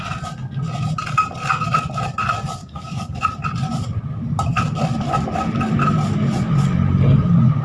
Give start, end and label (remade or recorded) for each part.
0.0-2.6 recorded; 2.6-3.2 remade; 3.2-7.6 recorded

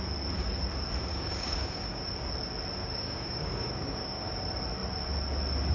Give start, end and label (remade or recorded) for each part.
0.0-1.1 recorded; 1.1-2.1 remade; 2.1-2.8 recorded; 2.8-4.3 remade; 4.3-5.7 recorded

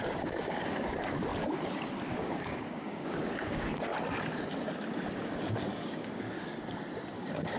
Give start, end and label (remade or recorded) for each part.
0.0-1.3 remade; 1.3-2.1 recorded; 2.1-3.9 remade; 3.9-5.1 recorded; 5.1-6.5 remade; 6.5-7.1 recorded; 7.1-7.6 remade

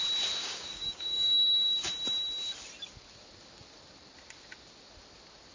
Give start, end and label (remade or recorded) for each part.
0.0-0.4 recorded; 0.4-1.7 remade; 1.7-5.5 recorded

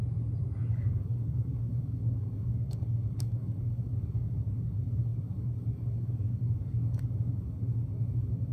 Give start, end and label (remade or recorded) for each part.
0.0-0.7 recorded; 0.7-8.5 remade

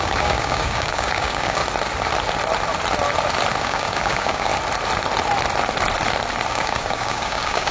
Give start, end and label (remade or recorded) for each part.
0.0-1.6 remade; 1.6-3.6 recorded; 3.6-4.5 remade; 4.5-6.5 recorded; 6.5-7.7 remade

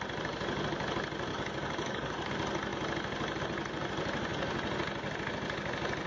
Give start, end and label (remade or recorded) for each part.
0.0-1.3 recorded; 1.3-2.3 remade; 2.3-6.1 recorded